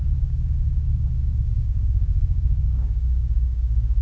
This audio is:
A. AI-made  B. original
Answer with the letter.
A